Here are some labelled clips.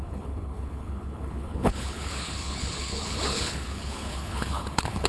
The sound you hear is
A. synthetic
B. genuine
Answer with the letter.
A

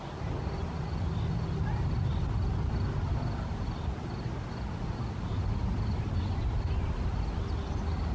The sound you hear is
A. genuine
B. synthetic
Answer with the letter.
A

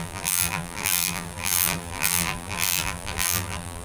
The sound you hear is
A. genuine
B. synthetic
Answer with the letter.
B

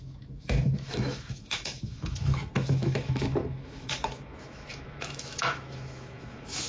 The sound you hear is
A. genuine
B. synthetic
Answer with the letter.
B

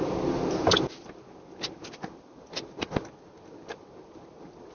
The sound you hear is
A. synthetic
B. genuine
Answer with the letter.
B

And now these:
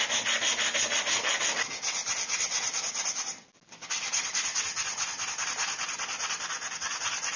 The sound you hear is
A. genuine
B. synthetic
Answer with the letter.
A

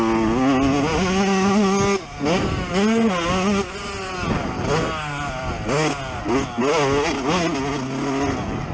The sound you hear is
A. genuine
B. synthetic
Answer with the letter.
A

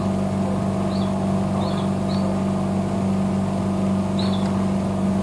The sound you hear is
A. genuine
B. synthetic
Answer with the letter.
A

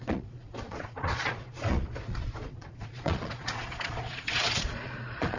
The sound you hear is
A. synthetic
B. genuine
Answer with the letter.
A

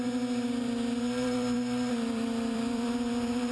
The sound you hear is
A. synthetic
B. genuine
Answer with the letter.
A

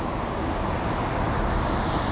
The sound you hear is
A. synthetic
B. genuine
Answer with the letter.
B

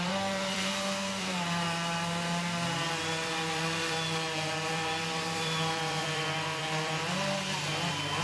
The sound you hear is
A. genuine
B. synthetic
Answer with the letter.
B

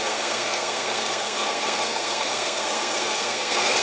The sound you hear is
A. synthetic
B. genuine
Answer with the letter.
A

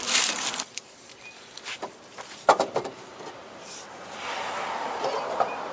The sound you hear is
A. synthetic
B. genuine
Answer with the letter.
A